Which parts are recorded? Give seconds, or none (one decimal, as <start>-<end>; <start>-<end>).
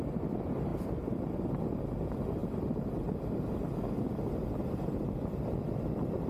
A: 0.0-6.3